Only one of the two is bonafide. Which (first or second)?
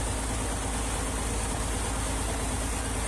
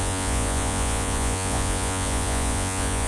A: first